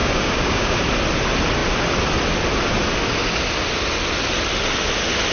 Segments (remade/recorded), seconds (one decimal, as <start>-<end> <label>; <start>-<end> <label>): 0.0-0.8 remade; 0.8-5.3 recorded